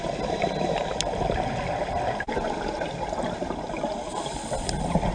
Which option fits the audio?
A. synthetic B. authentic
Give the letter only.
B